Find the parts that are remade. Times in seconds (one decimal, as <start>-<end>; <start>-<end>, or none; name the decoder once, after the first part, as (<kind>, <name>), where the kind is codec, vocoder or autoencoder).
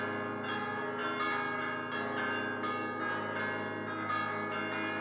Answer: none